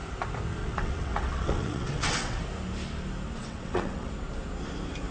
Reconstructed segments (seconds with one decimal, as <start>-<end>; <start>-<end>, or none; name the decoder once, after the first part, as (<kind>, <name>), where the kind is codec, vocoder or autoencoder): 0.6-2.4 (vocoder, WaveNeXt); 3.4-4.1